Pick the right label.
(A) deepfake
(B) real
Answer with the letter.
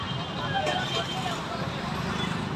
B